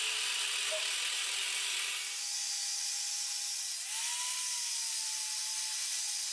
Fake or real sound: real